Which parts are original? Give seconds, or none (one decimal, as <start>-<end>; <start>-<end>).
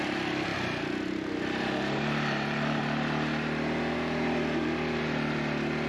0.0-5.9